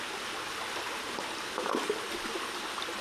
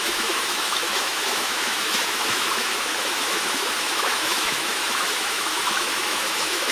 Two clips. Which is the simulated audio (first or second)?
second